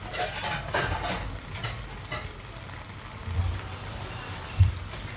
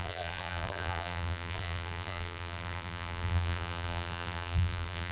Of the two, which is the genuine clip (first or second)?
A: first